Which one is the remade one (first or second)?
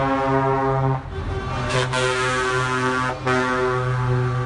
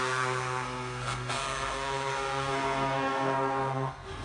second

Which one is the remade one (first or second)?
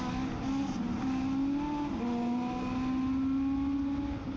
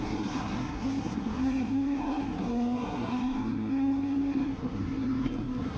second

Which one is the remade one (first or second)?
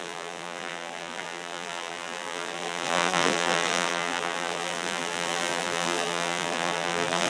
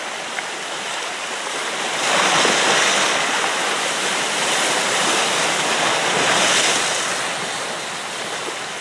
first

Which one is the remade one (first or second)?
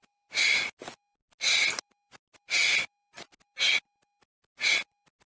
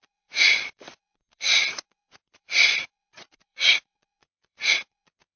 second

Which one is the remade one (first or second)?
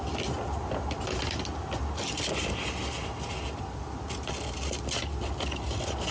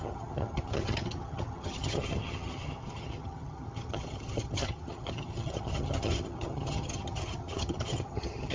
second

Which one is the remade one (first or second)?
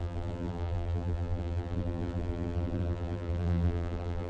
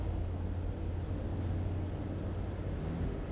first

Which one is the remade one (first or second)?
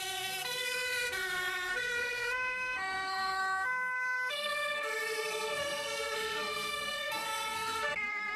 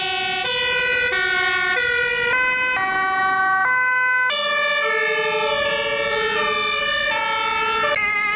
first